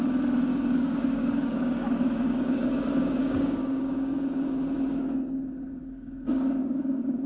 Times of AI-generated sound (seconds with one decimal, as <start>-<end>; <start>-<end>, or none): 0.5-4.7; 5.8-7.3